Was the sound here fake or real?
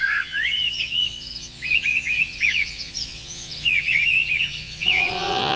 fake